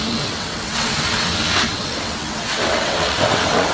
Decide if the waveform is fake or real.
fake